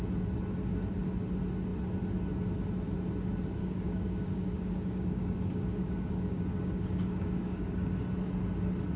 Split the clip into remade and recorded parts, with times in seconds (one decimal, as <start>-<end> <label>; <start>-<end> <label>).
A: 0.0-3.6 recorded; 3.6-8.0 remade; 8.0-9.0 recorded